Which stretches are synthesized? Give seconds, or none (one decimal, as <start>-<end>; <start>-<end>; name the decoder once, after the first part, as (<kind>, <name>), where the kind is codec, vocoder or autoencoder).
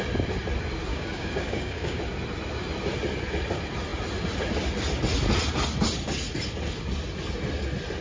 0.9-2.0 (codec, DAC)